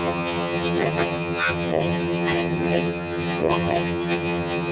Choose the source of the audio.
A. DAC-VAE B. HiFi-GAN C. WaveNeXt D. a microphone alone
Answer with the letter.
B